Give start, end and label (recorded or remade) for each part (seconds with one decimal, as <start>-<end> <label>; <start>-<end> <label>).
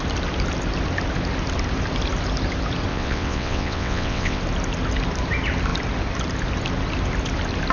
0.0-2.9 recorded; 2.9-4.4 remade; 4.4-7.7 recorded